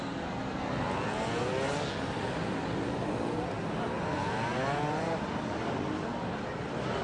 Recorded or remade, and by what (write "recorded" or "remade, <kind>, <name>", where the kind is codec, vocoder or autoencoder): recorded